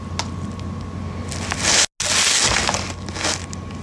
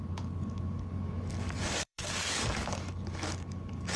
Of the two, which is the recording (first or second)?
first